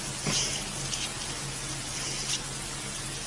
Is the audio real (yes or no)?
yes